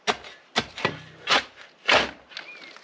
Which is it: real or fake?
real